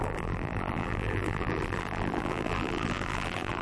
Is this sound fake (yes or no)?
yes